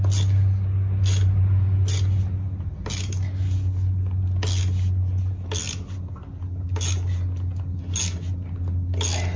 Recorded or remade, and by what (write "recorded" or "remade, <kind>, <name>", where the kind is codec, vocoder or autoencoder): recorded